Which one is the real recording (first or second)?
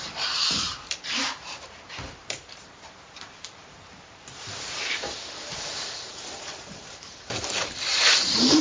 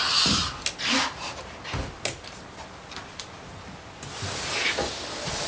second